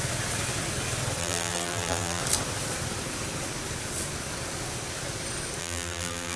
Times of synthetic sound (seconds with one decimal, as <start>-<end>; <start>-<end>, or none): 1.2-2.2; 5.6-6.4